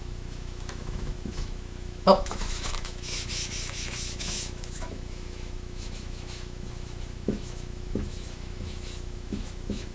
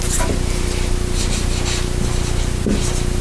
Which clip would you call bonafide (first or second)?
second